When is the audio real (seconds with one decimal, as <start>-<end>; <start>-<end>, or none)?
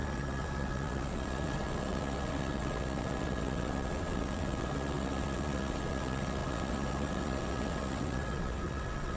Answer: none